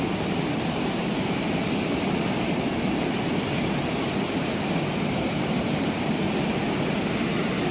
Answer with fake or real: real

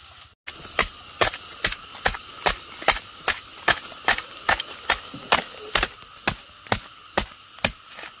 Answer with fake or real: real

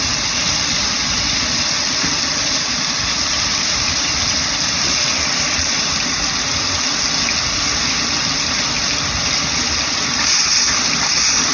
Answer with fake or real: real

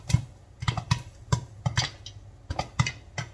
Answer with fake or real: real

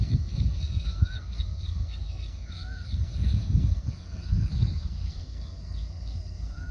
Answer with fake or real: fake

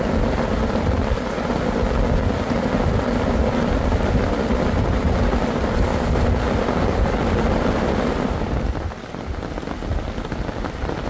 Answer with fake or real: real